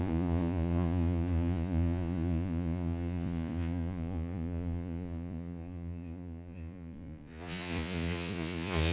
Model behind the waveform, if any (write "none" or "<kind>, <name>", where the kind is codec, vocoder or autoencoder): vocoder, Vocos